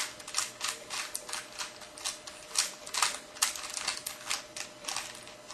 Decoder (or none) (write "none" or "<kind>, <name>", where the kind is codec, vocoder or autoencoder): none